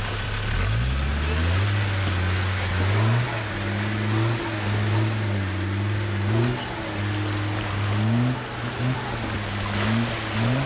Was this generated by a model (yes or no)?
no